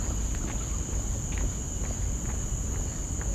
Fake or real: real